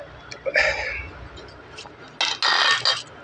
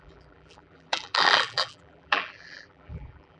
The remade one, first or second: second